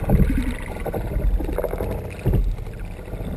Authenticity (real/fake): real